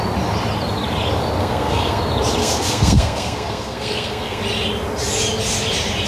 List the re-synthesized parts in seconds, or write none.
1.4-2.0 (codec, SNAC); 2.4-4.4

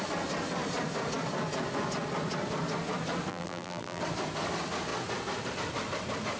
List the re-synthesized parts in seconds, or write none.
3.3-4.0 (vocoder, BigVGAN v2)

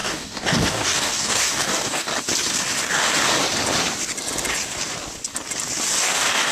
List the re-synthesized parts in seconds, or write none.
0.0-2.1 (codec, DAC); 6.0-6.5

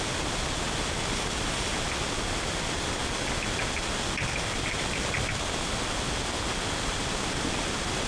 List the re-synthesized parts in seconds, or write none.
none

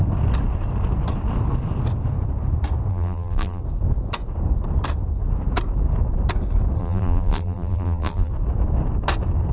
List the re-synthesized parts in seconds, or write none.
2.9-3.6 (vocoder, BigVGAN v2); 6.8-8.3